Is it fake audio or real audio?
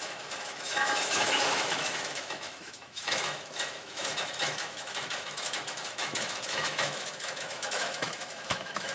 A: fake